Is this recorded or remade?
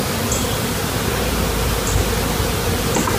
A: recorded